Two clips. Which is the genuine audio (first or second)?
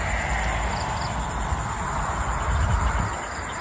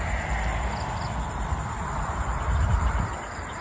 first